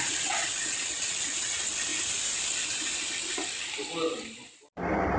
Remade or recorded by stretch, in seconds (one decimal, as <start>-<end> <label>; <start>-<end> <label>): 0.0-1.9 remade; 1.9-5.2 recorded